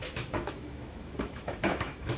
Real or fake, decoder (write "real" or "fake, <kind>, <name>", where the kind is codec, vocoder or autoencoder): fake, autoencoder, DAC-VAE